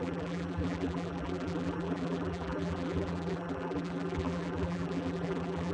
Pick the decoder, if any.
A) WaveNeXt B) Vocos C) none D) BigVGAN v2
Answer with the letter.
D